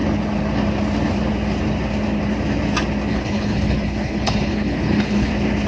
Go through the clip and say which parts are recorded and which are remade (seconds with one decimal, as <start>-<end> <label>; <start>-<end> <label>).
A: 0.0-3.1 recorded; 3.1-5.3 remade; 5.3-5.7 recorded